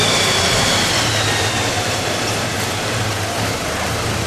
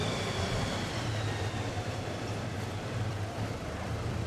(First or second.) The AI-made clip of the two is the second